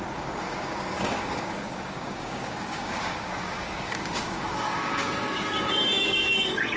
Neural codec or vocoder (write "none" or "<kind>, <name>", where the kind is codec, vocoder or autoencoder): codec, DAC